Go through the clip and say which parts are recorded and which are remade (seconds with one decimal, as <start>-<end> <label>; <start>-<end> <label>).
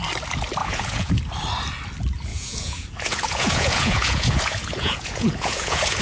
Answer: 0.0-0.6 recorded; 0.6-1.1 remade; 1.1-2.3 recorded; 2.3-6.0 remade